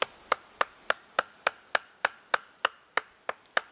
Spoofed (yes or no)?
no